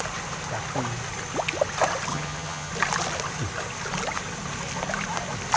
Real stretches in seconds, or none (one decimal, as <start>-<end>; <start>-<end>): 0.0-2.1; 2.7-5.6